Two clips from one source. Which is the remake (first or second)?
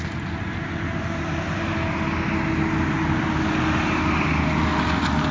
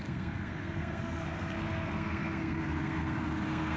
second